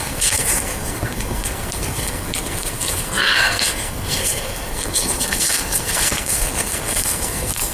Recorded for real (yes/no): no